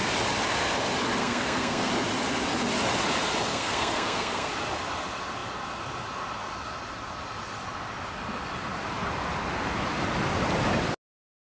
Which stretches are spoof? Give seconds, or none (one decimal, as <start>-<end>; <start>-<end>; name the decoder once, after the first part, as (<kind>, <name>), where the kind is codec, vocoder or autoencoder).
1.2-1.9 (codec, SNAC); 3.5-4.5